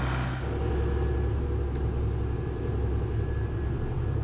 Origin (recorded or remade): recorded